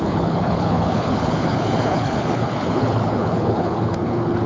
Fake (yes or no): yes